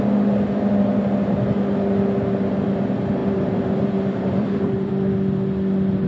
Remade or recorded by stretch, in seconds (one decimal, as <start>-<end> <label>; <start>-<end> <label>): 0.0-3.2 recorded; 3.2-4.9 remade; 4.9-6.1 recorded